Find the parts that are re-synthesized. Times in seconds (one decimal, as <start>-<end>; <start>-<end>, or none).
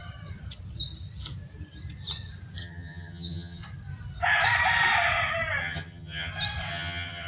2.6-3.6; 5.6-6.3; 6.7-7.3